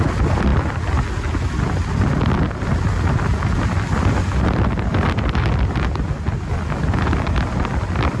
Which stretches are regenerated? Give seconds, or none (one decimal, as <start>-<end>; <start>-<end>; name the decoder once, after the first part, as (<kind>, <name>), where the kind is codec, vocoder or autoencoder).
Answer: none